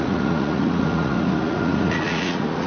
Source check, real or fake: fake